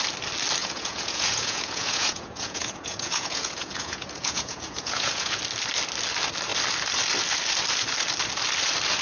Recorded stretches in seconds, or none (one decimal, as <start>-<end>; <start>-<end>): 0.0-0.6; 5.4-9.0